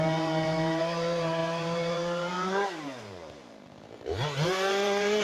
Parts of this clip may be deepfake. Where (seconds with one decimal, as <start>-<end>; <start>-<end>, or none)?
0.0-5.2

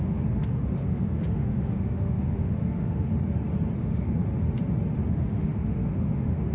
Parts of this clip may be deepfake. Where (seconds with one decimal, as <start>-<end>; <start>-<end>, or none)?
0.0-3.1; 3.8-4.2; 5.1-6.5